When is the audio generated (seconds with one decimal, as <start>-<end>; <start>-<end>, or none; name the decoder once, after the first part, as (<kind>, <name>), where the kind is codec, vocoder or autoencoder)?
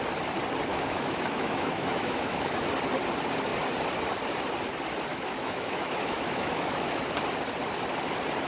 0.7-2.7 (autoencoder, DAC-VAE); 5.1-7.0